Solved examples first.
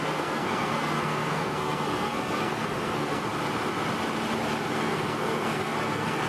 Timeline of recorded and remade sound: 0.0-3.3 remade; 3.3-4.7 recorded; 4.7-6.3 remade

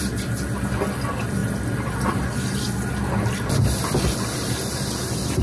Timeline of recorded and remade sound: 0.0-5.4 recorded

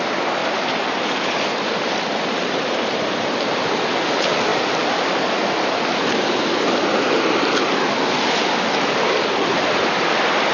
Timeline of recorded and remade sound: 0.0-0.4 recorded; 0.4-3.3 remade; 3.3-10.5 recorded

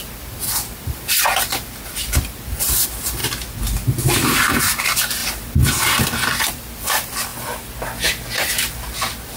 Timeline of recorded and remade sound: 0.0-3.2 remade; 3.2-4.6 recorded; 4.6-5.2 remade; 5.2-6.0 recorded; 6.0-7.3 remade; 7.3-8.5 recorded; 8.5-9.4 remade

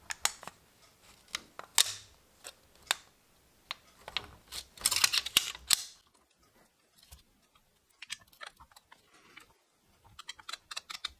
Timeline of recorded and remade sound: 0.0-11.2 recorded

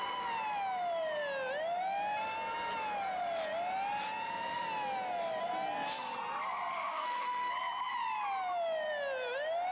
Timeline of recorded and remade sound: 0.0-6.7 recorded; 6.7-7.5 remade; 7.5-9.7 recorded

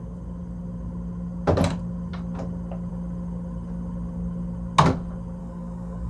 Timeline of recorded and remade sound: 0.0-5.4 recorded; 5.4-6.1 remade